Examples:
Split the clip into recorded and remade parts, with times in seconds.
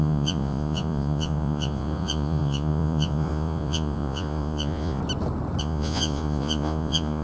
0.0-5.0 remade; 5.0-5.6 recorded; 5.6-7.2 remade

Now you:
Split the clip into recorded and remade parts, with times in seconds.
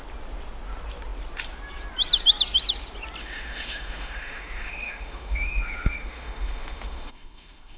0.0-3.2 recorded; 3.2-7.8 remade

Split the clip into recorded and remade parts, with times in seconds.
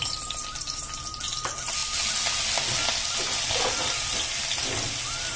0.0-5.4 recorded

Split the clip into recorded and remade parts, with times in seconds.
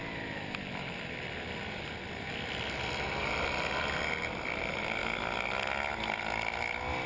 0.0-7.1 recorded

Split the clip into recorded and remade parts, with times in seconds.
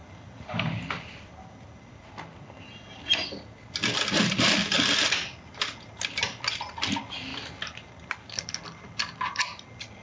0.0-2.2 remade; 2.2-10.0 recorded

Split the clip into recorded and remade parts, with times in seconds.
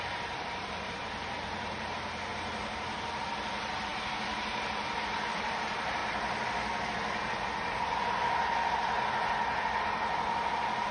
0.0-6.0 remade; 6.0-9.8 recorded; 9.8-10.9 remade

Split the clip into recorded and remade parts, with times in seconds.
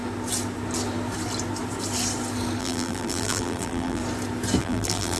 0.0-2.6 recorded; 2.6-4.0 remade; 4.0-4.6 recorded; 4.6-5.2 remade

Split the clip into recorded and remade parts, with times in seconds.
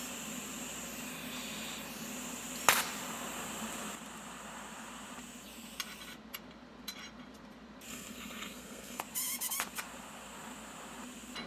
0.0-7.9 recorded; 7.9-9.0 remade; 9.0-11.5 recorded